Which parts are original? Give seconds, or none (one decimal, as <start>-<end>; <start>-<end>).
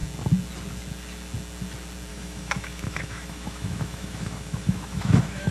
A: 0.0-2.1